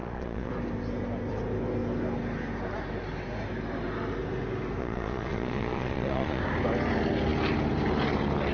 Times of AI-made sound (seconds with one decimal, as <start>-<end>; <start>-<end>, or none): 0.0-0.5; 4.8-6.4